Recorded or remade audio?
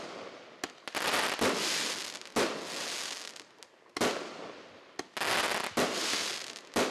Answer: recorded